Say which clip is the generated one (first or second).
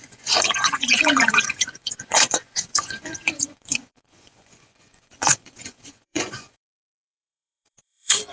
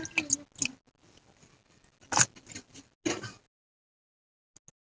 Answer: first